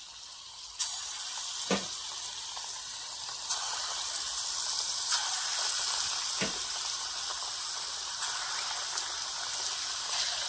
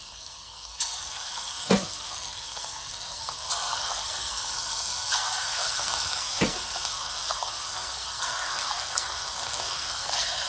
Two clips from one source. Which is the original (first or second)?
first